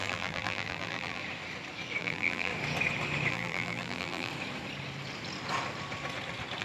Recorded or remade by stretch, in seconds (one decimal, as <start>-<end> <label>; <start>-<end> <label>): 0.0-1.2 remade; 1.2-2.0 recorded; 2.0-2.5 remade; 2.5-3.3 recorded; 3.3-4.3 remade; 4.3-6.6 recorded